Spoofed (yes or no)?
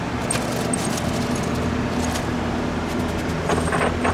no